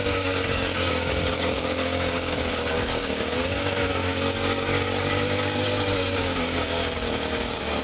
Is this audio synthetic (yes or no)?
yes